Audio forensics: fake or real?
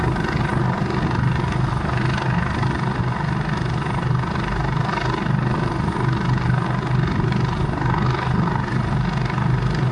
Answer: real